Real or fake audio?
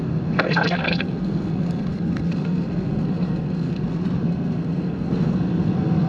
fake